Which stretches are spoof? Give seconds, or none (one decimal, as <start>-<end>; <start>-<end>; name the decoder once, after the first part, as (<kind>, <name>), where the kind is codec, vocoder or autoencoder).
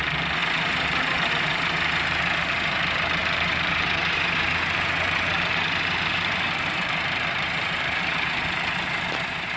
0.0-9.6 (vocoder, BigVGAN v2)